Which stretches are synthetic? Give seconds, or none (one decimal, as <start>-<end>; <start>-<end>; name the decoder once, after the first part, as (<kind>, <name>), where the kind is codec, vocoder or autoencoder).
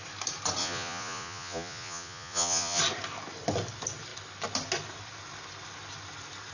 0.6-2.8 (vocoder, Vocos)